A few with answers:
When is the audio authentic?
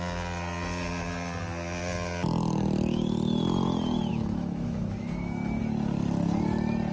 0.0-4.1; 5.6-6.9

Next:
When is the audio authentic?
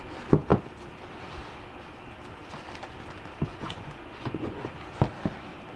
0.0-3.5; 4.7-5.8